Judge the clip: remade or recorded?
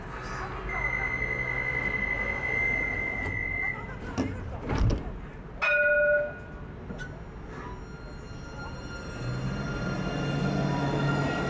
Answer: recorded